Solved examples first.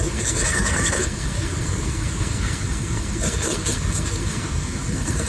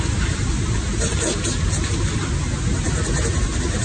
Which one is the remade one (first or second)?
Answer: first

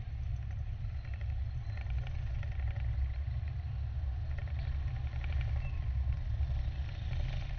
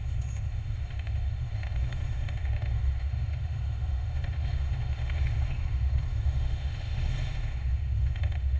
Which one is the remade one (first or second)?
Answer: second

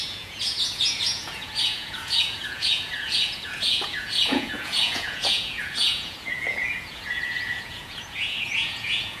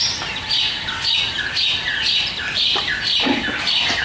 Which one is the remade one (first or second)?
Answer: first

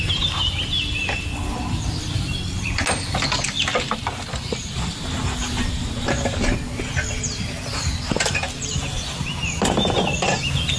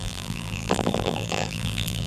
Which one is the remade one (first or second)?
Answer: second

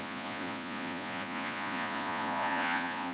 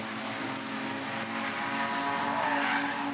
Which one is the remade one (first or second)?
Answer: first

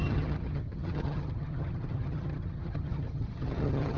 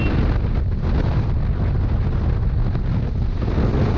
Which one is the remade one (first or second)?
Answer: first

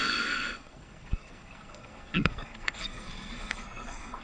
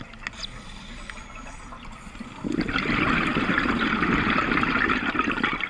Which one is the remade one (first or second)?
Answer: first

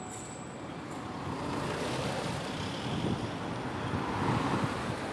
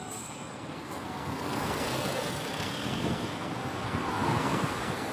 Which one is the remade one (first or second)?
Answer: second